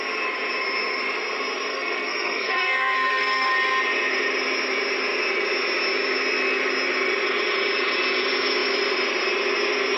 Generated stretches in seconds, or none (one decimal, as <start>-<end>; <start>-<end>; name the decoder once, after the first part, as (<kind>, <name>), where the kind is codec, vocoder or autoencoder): 1.7-3.5 (codec, SNAC)